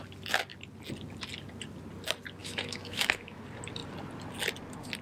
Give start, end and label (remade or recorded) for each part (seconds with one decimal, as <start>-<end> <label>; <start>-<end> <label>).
0.0-2.4 recorded; 2.4-3.4 remade; 3.4-5.0 recorded